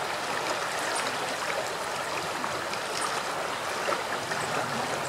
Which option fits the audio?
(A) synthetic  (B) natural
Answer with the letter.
B